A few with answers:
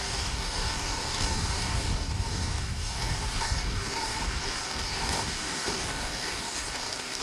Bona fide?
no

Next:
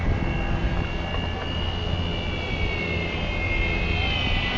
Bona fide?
yes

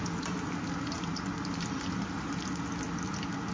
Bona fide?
yes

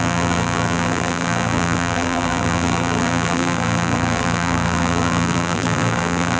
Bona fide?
no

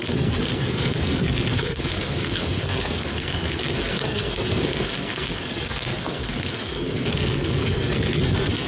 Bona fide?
no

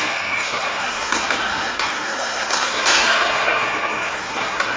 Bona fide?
no